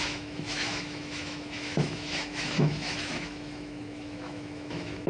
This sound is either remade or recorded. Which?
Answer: remade